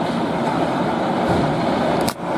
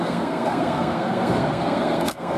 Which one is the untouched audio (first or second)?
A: first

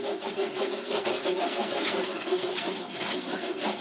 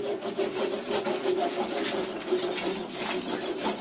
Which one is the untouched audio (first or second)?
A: second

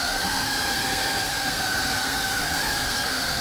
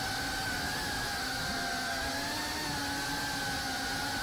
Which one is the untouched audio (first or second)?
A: second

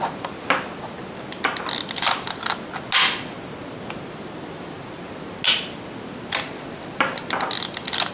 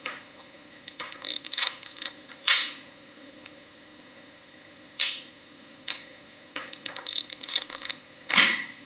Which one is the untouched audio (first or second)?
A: first